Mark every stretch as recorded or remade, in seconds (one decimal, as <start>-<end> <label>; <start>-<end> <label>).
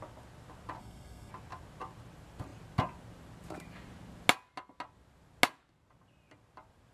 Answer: 0.0-0.8 recorded; 0.8-1.3 remade; 1.3-6.9 recorded